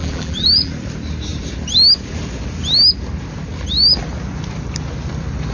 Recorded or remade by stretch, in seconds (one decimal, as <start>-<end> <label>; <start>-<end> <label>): 0.0-0.7 remade; 0.7-5.5 recorded